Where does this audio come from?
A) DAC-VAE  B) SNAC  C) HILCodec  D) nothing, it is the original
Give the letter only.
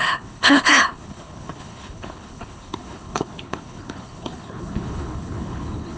C